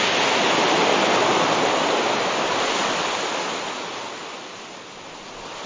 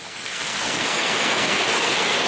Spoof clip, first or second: second